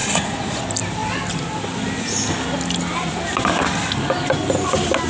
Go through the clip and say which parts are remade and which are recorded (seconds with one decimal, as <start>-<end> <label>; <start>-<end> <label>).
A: 0.0-0.6 remade; 0.6-5.1 recorded